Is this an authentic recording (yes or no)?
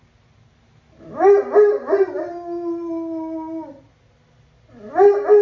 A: yes